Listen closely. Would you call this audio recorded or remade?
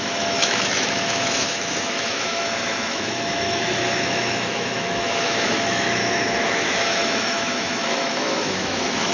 remade